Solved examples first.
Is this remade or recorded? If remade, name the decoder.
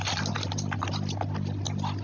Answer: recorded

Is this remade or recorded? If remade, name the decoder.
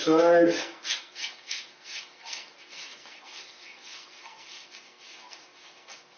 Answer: remade, codec, SNAC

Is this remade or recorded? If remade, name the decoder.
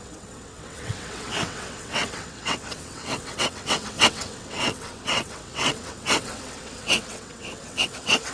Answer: remade, vocoder, WaveNeXt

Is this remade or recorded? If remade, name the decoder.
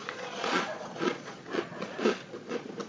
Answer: remade, vocoder, Vocos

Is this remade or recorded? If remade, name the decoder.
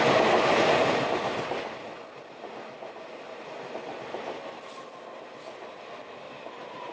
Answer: recorded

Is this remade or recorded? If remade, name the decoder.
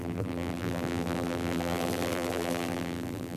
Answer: remade, vocoder, BigVGAN v2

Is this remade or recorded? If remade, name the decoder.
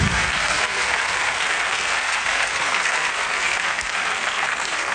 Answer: remade, codec, SNAC